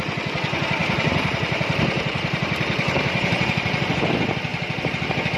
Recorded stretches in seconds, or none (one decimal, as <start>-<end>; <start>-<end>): 0.0-0.8; 4.0-5.4